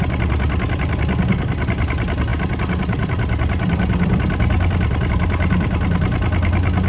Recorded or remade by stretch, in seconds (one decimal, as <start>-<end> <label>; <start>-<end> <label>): 0.0-6.9 recorded